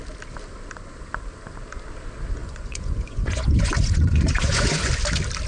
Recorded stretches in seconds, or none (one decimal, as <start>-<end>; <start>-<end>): 0.0-2.4; 4.9-5.5